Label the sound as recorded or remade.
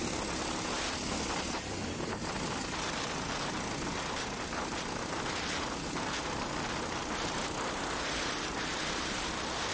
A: recorded